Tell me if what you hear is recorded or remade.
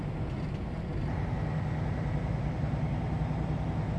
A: recorded